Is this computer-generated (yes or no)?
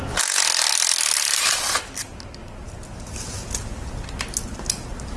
no